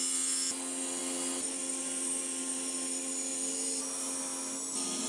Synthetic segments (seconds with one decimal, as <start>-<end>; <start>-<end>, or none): none